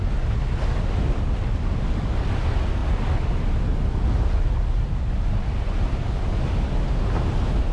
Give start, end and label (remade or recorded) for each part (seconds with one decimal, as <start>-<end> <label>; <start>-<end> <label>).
0.0-7.7 recorded